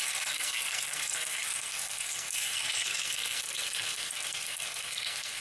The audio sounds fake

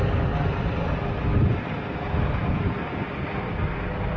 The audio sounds real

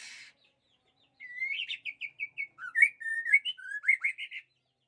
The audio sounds real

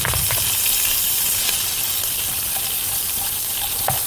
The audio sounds real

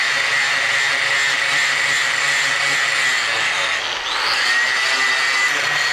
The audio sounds real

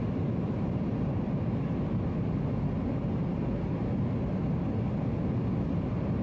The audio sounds real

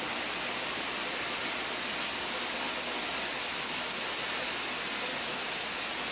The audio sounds real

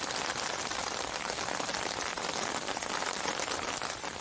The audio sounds fake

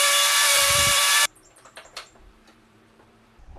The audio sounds fake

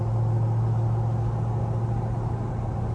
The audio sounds real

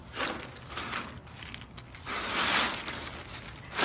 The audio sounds real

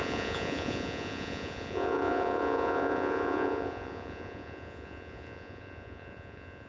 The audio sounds fake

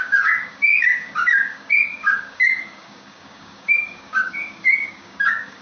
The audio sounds fake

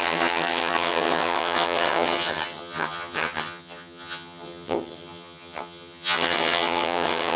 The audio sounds fake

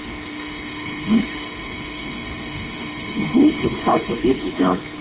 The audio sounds fake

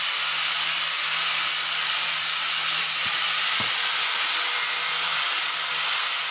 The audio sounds fake